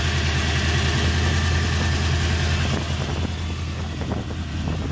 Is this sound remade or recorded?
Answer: recorded